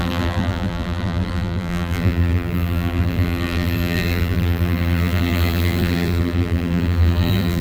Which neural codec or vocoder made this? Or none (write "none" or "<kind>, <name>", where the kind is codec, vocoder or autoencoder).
vocoder, BigVGAN v2